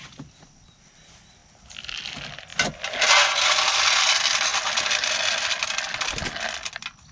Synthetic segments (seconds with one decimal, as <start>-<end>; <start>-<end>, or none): none